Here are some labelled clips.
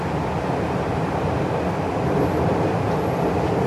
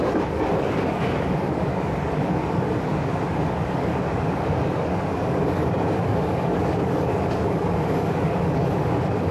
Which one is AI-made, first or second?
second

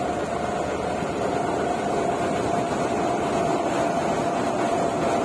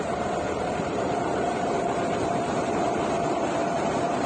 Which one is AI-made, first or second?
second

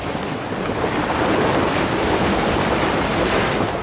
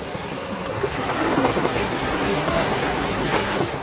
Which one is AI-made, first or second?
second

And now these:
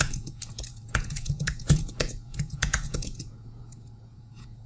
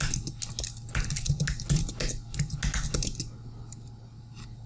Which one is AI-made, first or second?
first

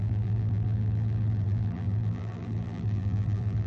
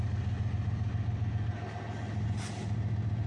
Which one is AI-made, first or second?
first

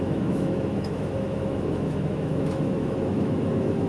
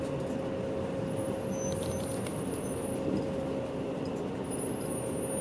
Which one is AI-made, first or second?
first